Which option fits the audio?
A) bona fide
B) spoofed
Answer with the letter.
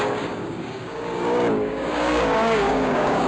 B